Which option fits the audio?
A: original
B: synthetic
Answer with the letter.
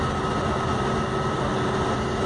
A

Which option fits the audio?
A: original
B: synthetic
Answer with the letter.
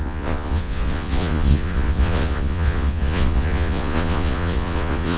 B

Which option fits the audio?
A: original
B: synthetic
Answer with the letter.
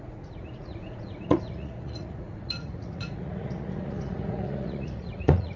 B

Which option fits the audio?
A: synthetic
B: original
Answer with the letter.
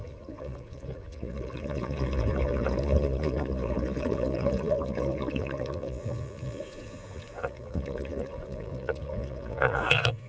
A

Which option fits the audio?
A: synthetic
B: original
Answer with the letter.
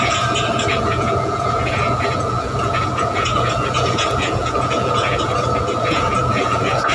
A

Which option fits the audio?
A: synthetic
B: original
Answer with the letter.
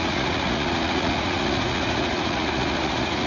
A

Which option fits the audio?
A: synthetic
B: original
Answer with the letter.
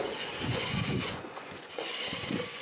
A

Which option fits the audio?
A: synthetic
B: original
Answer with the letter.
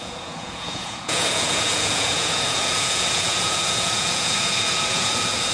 A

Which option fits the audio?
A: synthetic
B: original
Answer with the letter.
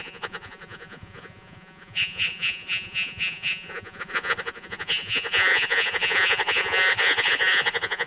A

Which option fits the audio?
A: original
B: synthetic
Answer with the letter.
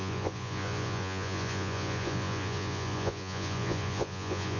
B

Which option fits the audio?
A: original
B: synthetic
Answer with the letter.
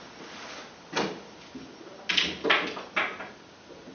A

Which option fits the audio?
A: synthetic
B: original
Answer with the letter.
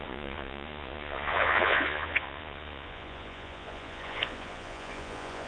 A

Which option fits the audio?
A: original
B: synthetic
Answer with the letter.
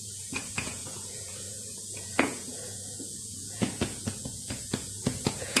B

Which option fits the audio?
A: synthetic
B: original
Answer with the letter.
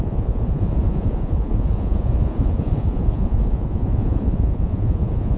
A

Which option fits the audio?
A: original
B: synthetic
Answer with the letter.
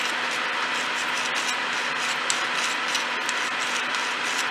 A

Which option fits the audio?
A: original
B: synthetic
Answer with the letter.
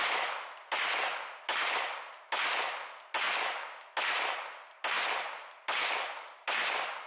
A